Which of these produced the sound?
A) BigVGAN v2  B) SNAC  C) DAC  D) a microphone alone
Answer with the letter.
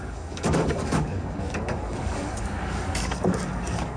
C